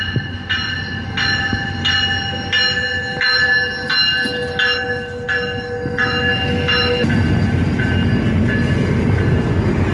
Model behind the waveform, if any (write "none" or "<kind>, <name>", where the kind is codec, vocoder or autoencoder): none